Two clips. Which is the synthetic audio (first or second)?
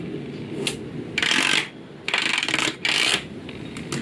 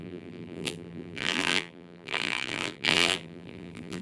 second